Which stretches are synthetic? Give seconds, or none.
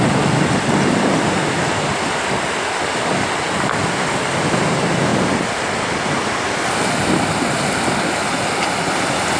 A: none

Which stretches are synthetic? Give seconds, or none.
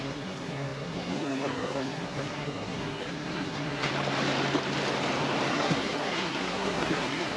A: 0.0-3.9 (codec, SNAC); 5.5-7.4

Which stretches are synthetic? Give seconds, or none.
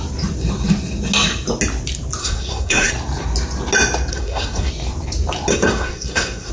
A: 2.2-2.9 (codec, SNAC); 4.1-4.7; 5.5-6.5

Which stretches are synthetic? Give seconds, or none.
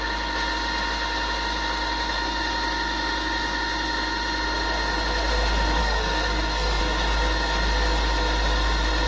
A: 5.8-6.8 (codec, SNAC)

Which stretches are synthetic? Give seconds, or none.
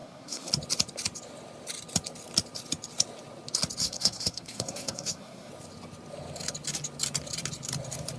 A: 0.0-0.5 (codec, SNAC); 3.8-5.5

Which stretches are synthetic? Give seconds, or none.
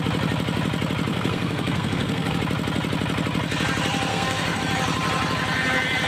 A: 1.1-2.4 (codec, SNAC); 4.1-4.6